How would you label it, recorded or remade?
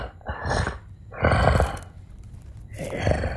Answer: recorded